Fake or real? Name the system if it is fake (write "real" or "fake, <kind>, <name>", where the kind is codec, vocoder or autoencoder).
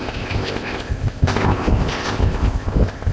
fake, codec, ZipCodec